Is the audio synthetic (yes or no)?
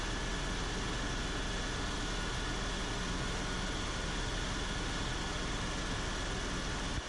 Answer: no